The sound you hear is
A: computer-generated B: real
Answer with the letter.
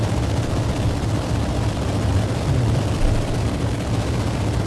B